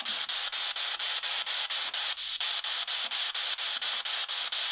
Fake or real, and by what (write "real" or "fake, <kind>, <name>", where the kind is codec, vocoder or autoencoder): real